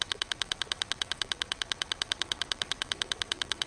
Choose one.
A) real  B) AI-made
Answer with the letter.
B